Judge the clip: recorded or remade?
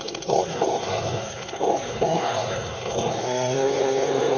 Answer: remade